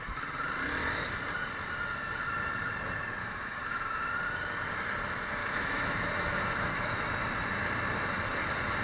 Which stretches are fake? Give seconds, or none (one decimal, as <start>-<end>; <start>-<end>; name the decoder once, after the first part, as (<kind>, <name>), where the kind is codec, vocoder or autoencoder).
3.2-4.0 (autoencoder, DAC-VAE); 5.4-7.1